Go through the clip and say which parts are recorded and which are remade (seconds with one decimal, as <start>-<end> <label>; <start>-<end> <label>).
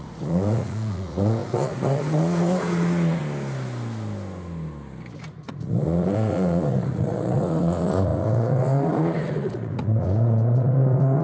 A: 0.0-3.2 remade; 3.2-5.2 recorded; 5.2-11.2 remade